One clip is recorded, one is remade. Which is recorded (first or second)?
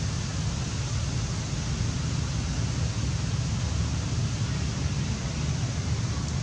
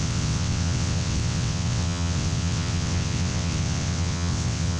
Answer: first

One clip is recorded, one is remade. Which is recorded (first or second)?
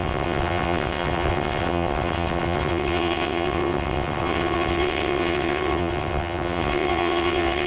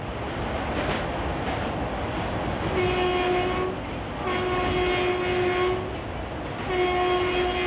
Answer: second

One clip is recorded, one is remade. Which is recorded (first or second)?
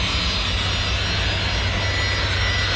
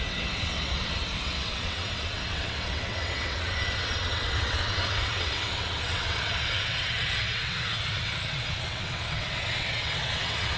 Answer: first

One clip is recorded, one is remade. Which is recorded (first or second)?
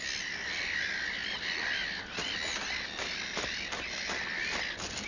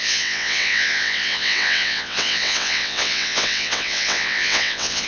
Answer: first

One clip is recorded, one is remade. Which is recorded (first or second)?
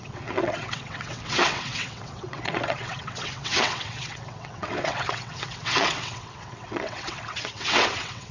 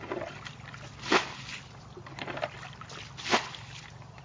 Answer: second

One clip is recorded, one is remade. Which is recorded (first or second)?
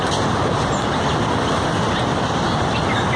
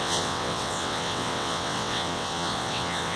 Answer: first